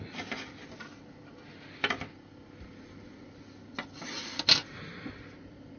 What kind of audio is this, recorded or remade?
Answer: recorded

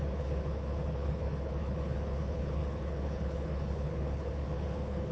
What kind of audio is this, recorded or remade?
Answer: remade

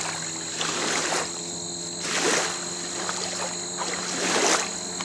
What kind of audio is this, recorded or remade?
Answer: recorded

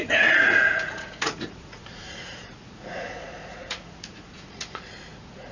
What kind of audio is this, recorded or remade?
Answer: remade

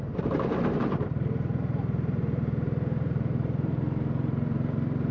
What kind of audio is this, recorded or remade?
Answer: remade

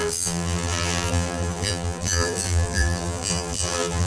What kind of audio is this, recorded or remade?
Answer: remade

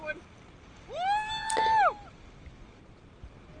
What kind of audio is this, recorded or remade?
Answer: recorded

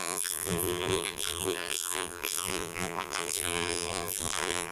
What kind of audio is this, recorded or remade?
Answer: remade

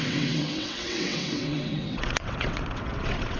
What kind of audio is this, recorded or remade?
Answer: remade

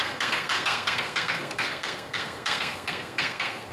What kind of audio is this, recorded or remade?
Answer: remade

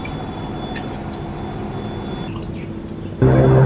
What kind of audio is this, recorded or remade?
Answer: recorded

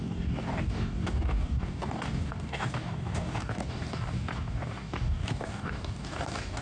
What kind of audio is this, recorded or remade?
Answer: remade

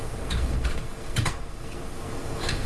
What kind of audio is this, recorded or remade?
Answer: remade